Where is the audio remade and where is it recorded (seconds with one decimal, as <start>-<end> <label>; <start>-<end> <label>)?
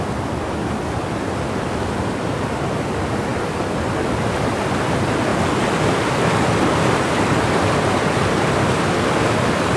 0.0-9.8 recorded